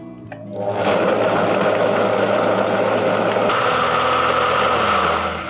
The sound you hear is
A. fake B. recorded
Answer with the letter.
B